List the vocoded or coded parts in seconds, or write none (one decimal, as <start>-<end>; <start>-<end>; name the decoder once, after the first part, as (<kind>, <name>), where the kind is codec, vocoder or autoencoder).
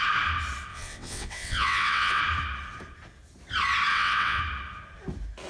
0.7-2.2 (vocoder, WaveNeXt); 3.9-4.4